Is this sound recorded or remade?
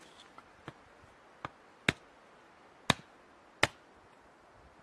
recorded